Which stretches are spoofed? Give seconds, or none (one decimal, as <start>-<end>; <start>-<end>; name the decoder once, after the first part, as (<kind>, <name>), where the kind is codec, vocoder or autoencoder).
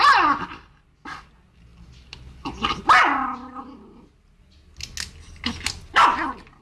none